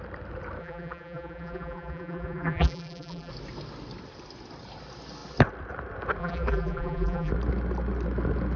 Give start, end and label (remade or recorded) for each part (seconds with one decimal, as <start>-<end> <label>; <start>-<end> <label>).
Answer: 0.0-0.6 recorded; 0.6-3.3 remade; 3.3-6.2 recorded; 6.2-7.3 remade; 7.3-8.6 recorded